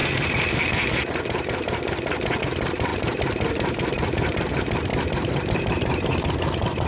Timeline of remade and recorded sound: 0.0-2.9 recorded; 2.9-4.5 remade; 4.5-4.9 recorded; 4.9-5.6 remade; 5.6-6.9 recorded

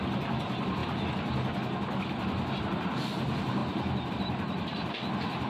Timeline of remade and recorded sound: 0.0-0.8 remade; 0.8-2.6 recorded; 2.6-3.6 remade; 3.6-4.1 recorded; 4.1-5.5 remade

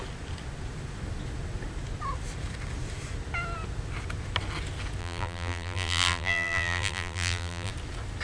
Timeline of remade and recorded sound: 0.0-5.0 recorded; 5.0-7.7 remade; 7.7-8.2 recorded

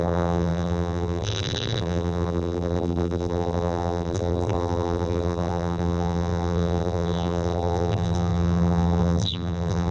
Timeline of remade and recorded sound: 0.0-9.9 remade